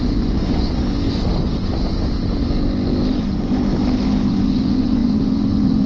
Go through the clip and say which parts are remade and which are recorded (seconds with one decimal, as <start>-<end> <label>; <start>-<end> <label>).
0.0-0.8 remade; 0.8-4.3 recorded; 4.3-5.9 remade